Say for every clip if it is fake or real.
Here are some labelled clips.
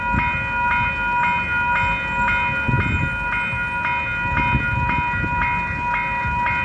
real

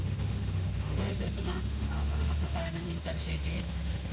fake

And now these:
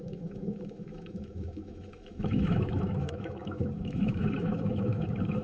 fake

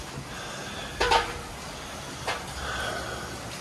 real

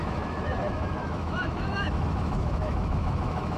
fake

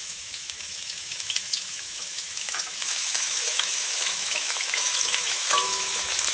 fake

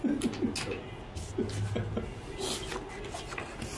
real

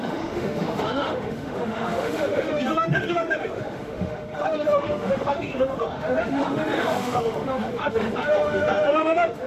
fake